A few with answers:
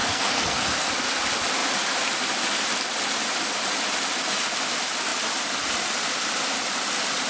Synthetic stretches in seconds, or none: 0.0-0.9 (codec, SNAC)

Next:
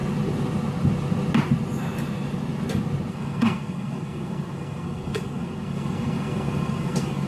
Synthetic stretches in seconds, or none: 3.1-7.3 (codec, SNAC)

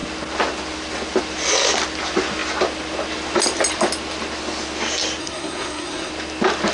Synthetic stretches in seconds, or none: 5.2-6.1 (codec, SNAC)

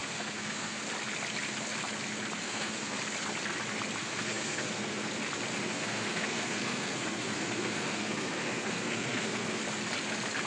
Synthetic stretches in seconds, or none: 0.0-0.8 (codec, SNAC); 2.4-3.0; 4.0-5.1; 5.6-9.6

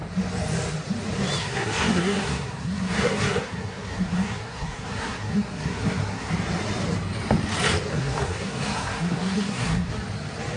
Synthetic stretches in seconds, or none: 1.4-6.3 (codec, SNAC); 7.9-9.9

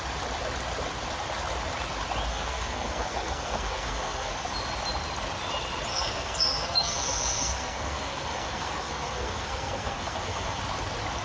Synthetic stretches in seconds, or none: 2.3-4.3 (codec, SNAC); 5.9-10.6

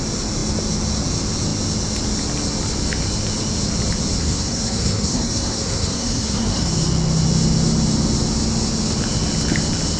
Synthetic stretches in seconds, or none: 4.2-6.7 (codec, SNAC)

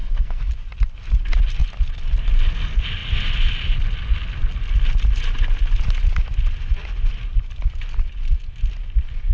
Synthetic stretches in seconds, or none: 0.0-0.5 (codec, SNAC)